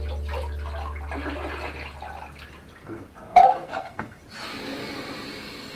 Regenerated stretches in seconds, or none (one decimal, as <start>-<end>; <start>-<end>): 2.8-4.2